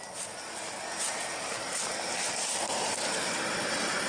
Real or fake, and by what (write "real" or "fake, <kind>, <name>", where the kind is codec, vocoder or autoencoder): real